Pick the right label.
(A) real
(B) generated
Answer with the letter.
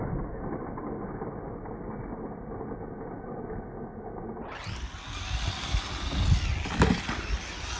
A